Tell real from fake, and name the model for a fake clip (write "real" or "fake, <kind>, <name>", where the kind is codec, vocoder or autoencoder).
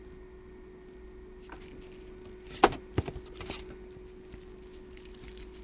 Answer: real